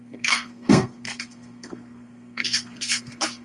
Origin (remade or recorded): remade